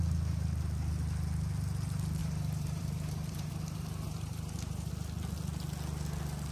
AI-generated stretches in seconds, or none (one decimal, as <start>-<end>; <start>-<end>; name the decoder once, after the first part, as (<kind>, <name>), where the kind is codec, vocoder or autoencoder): 2.2-4.9 (vocoder, BigVGAN v2)